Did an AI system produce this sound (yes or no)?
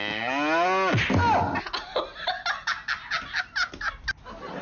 no